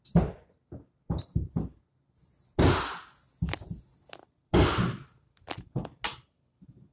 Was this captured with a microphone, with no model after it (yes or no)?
yes